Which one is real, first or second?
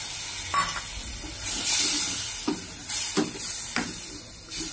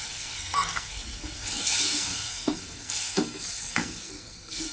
first